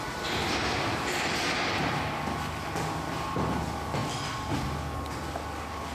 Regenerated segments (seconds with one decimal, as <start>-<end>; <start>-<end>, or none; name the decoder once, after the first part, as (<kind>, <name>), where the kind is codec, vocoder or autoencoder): none